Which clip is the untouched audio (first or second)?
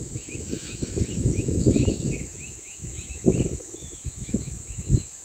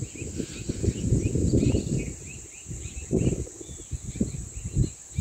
second